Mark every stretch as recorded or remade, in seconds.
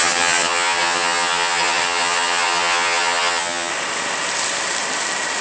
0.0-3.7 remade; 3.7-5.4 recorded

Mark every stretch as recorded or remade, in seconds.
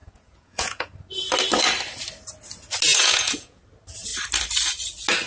0.0-0.9 remade; 0.9-2.9 recorded; 2.9-3.6 remade; 3.6-5.3 recorded